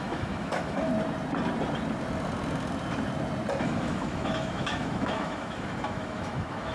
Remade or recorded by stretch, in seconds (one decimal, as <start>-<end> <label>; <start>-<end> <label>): 0.0-0.9 remade; 0.9-3.6 recorded; 3.6-6.7 remade